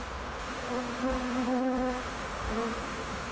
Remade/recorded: remade